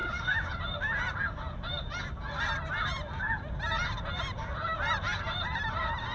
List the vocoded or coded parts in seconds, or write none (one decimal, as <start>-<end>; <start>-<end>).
0.0-0.5